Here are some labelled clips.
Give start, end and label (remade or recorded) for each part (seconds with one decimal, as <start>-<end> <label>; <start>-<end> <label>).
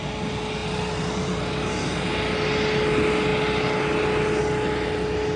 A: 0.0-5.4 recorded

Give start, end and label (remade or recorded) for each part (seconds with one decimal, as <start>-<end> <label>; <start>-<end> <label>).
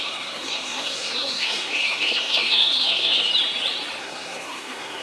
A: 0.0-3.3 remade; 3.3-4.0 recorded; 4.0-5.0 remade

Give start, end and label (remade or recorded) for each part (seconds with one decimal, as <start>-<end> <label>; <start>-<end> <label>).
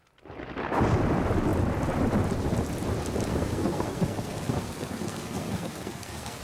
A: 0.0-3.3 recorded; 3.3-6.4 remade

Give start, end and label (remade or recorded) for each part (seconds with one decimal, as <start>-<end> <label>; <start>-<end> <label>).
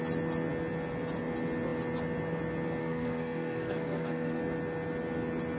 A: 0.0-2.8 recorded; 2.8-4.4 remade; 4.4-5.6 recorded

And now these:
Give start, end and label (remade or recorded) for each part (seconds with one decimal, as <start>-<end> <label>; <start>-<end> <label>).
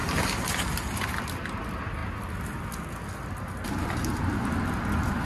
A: 0.0-5.2 recorded